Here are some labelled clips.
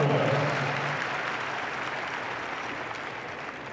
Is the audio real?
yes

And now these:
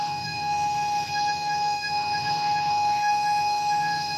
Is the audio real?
no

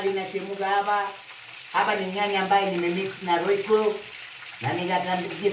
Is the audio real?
yes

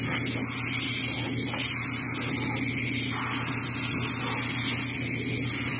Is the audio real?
yes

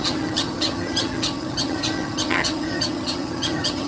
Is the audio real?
no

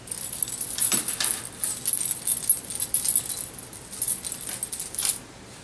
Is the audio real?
yes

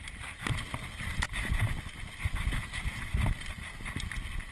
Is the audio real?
yes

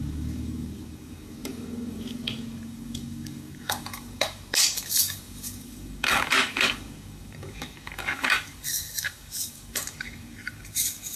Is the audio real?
no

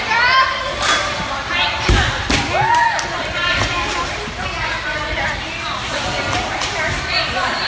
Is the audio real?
no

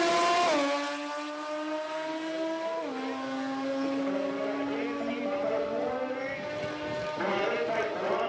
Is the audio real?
yes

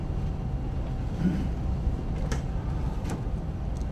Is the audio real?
yes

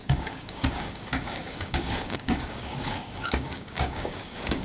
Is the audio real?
no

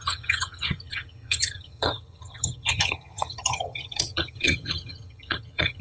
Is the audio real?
no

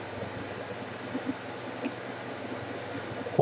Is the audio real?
yes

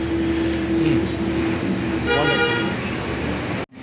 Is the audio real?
yes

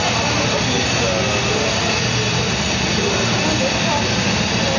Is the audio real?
yes